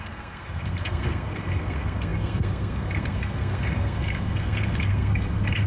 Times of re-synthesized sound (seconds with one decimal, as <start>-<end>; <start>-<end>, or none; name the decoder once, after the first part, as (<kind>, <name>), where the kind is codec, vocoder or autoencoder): 0.0-5.7 (codec, SNAC)